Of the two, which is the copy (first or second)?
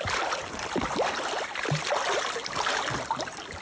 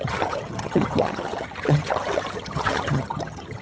second